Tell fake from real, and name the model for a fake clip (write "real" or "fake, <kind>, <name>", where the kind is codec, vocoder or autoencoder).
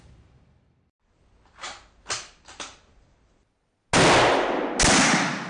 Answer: real